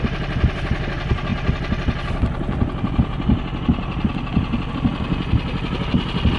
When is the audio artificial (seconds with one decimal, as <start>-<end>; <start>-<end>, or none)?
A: none